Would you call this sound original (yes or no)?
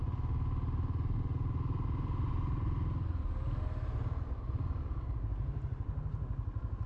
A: yes